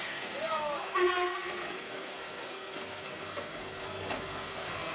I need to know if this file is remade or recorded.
remade